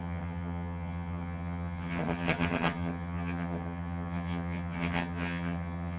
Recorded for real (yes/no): no